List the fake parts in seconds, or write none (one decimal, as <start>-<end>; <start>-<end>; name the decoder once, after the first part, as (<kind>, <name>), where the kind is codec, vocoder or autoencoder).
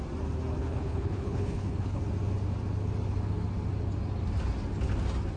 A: 0.6-2.0 (codec, HILCodec)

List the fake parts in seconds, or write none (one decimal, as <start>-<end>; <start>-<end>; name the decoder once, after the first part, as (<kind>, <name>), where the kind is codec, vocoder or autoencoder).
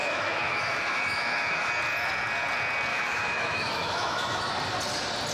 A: 0.0-1.7 (autoencoder, DAC-VAE); 2.9-4.5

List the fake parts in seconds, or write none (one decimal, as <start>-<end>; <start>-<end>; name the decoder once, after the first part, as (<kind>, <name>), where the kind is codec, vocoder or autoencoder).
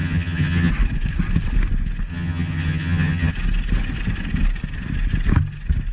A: 0.0-0.7 (vocoder, HiFi-GAN); 2.1-3.3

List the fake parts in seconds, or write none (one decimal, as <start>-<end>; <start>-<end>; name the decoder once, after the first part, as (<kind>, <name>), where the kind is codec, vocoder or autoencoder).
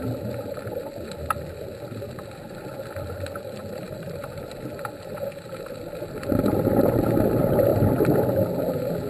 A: 3.6-4.6 (vocoder, BigVGAN v2); 7.7-8.3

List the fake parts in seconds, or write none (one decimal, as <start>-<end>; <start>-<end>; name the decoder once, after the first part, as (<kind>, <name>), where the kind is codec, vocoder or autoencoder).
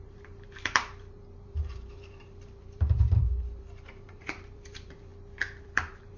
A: 0.0-5.1 (vocoder, BigVGAN v2); 5.6-6.2